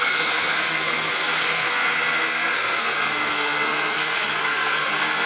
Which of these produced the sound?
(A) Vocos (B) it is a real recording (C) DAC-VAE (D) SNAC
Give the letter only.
D